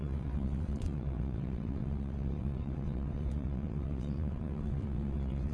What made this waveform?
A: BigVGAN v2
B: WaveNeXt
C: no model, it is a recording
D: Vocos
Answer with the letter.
B